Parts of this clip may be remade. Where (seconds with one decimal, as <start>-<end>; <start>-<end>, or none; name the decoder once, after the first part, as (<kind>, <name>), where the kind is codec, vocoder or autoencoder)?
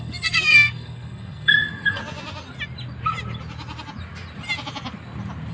0.0-2.0 (codec, SNAC)